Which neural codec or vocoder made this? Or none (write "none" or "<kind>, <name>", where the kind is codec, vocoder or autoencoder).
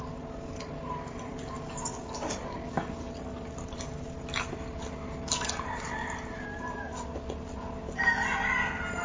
none